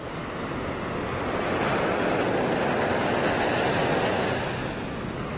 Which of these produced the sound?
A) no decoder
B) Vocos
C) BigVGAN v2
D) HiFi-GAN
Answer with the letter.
A